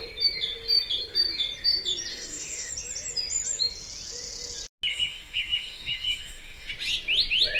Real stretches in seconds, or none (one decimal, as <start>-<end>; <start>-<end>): 0.0-2.1; 2.7-4.9; 6.7-7.6